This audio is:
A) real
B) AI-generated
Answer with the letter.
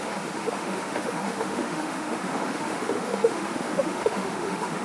B